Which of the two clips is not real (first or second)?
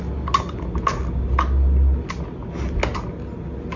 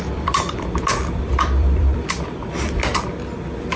second